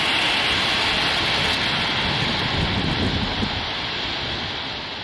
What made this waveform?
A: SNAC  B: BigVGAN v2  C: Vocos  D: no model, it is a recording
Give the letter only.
D